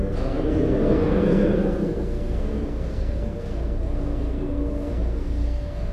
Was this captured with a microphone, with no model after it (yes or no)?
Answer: no